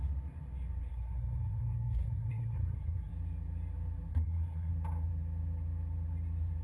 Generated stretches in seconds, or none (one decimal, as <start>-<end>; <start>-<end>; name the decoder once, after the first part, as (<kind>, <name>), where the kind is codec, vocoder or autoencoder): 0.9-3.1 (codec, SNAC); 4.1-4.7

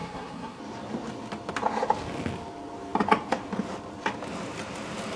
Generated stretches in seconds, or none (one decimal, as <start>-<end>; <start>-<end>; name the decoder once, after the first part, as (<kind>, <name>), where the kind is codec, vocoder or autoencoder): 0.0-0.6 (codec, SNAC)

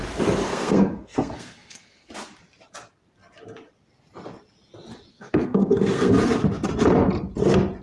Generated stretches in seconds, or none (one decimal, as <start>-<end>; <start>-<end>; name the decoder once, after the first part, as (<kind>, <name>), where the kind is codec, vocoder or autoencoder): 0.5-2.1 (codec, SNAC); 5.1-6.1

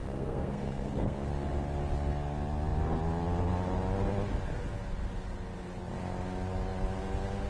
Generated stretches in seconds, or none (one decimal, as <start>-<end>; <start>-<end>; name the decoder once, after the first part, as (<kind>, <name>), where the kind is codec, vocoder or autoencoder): 0.0-1.3 (codec, SNAC)